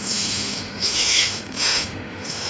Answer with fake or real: fake